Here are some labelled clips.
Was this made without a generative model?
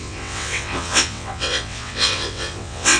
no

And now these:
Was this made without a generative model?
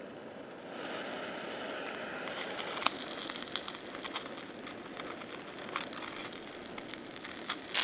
yes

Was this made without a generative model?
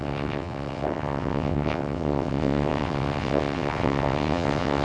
no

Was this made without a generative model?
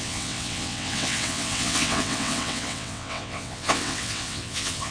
no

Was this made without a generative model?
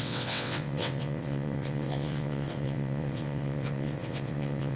no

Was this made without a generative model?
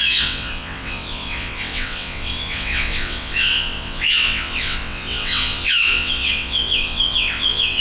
no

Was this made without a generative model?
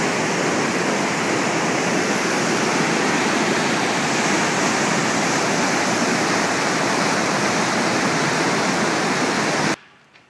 yes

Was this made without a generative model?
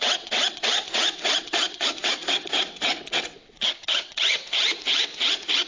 no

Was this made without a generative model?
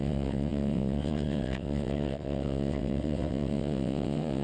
no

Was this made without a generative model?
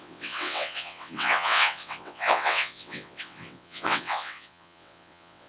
no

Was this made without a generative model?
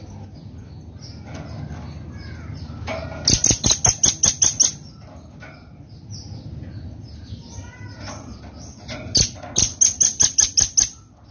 yes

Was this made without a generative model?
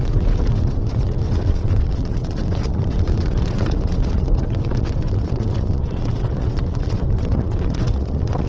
no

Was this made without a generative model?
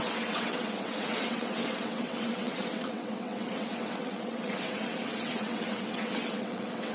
no